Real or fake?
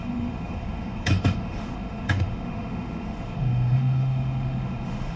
fake